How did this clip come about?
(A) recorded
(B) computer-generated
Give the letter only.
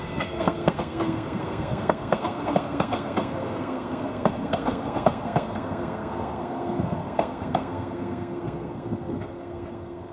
B